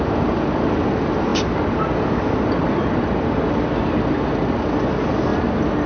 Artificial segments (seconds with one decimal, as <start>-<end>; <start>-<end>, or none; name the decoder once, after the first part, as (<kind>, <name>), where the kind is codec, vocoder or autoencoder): 1.3-3.8 (vocoder, BigVGAN v2)